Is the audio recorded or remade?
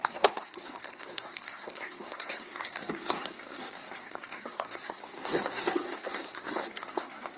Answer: remade